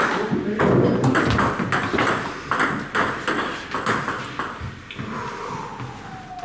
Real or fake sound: real